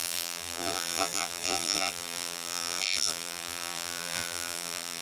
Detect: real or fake fake